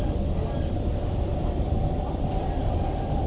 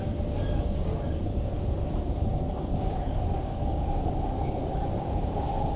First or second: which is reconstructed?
second